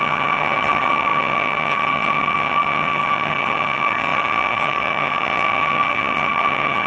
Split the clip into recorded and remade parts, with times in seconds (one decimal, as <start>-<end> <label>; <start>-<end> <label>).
0.0-6.9 remade